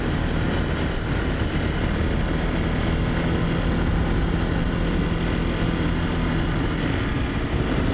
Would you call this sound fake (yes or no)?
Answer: no